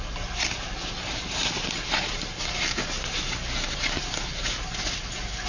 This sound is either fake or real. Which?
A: real